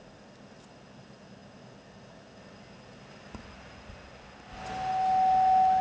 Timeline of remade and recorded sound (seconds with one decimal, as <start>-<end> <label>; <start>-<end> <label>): 0.0-5.8 recorded